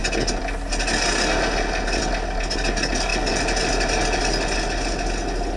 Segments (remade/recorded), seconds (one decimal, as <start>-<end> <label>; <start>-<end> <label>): 0.0-5.6 recorded